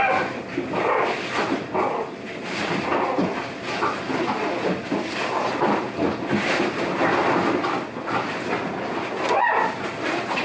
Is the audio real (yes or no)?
yes